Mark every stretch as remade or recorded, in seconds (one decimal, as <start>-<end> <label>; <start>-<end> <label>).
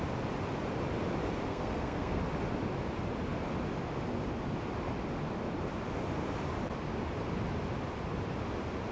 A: 0.0-1.5 recorded; 1.5-2.2 remade; 2.2-8.9 recorded